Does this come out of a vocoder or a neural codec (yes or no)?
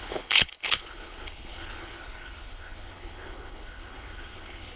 yes